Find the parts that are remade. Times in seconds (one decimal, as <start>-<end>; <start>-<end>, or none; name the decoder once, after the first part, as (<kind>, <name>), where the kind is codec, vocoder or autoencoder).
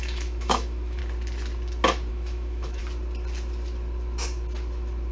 0.0-1.0 (autoencoder, DAC-VAE); 2.1-2.8